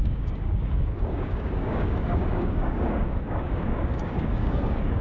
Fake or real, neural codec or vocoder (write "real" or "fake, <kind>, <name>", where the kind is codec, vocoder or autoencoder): fake, codec, DAC